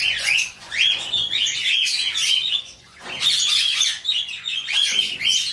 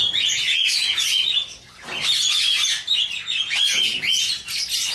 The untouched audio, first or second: second